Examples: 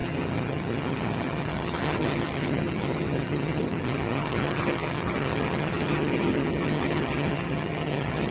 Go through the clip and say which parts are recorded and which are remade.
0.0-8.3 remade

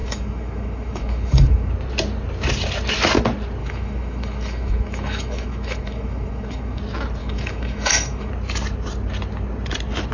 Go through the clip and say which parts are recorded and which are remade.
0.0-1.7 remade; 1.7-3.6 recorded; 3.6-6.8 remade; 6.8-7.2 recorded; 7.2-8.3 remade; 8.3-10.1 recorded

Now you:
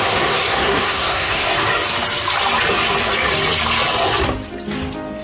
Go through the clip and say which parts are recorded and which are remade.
0.0-1.5 remade; 1.5-5.2 recorded